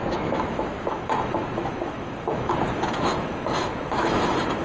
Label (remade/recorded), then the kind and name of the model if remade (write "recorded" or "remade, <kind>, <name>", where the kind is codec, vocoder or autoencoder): remade, autoencoder, DAC-VAE